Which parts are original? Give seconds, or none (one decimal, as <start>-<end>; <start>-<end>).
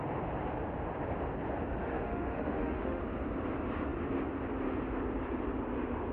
0.0-1.8; 3.0-6.1